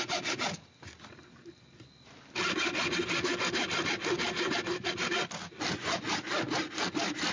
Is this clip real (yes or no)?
yes